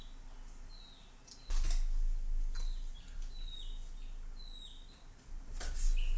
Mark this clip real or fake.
real